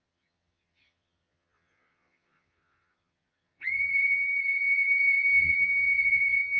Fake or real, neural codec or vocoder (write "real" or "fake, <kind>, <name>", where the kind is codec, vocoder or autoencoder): fake, vocoder, Vocos